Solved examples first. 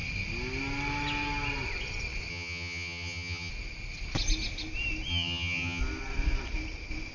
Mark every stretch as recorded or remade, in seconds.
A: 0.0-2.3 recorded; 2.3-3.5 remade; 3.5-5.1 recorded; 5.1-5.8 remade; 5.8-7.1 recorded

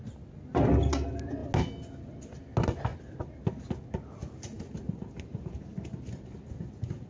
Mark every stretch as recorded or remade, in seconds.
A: 0.0-7.1 recorded

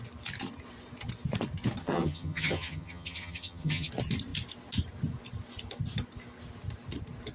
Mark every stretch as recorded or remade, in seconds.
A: 0.0-1.8 recorded; 1.8-3.9 remade; 3.9-7.3 recorded

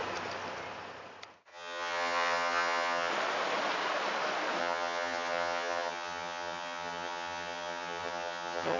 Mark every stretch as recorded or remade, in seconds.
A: 0.0-1.5 recorded; 1.5-3.1 remade; 3.1-4.6 recorded; 4.6-8.8 remade